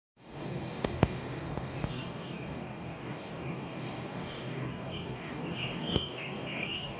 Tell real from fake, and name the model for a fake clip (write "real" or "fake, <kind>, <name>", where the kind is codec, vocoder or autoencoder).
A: fake, codec, DAC